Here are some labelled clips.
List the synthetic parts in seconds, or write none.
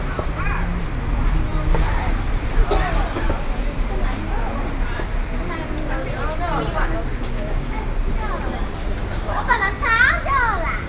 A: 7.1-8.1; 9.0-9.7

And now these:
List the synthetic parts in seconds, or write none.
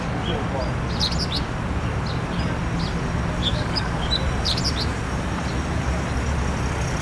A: 3.4-4.1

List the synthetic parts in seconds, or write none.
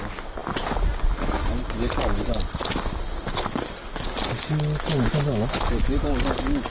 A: none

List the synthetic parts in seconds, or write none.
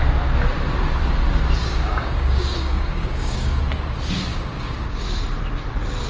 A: 1.6-3.6; 4.3-5.0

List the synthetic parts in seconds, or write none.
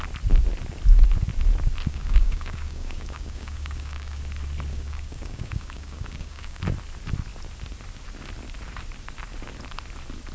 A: 1.9-4.2; 4.7-6.6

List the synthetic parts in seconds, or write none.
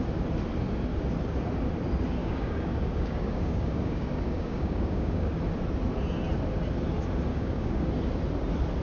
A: 2.2-5.4; 7.3-7.9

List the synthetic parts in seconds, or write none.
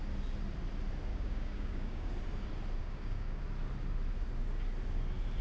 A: 1.1-2.1; 2.8-3.4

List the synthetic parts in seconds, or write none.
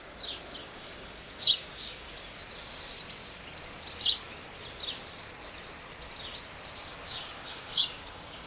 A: 0.6-2.1; 6.9-8.5